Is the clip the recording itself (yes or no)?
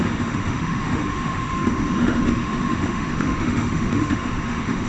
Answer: no